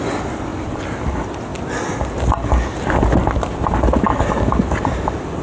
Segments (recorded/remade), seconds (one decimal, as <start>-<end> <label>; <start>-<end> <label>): 0.0-5.4 recorded